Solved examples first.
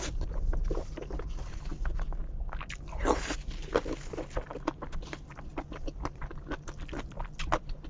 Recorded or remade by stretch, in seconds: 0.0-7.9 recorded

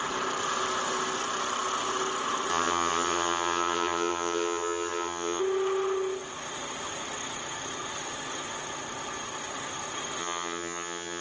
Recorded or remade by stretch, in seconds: 0.0-2.5 recorded; 2.5-5.4 remade; 5.4-10.2 recorded; 10.2-11.2 remade

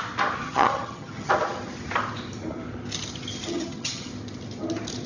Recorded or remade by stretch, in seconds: 0.0-0.4 recorded; 0.4-1.3 remade; 1.3-3.5 recorded; 3.5-4.1 remade; 4.1-5.1 recorded

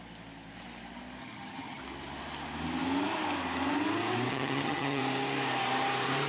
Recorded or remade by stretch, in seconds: 0.0-1.2 recorded; 1.2-1.8 remade; 1.8-4.3 recorded; 4.3-5.0 remade; 5.0-6.3 recorded

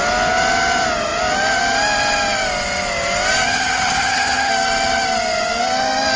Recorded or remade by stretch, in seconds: 0.0-3.5 recorded; 3.5-4.5 remade; 4.5-6.2 recorded